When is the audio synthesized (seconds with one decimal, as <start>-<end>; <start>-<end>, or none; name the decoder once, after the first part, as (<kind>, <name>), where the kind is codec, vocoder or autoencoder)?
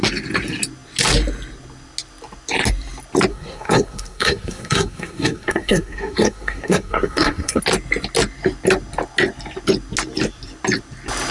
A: 3.3-7.6 (codec, SNAC)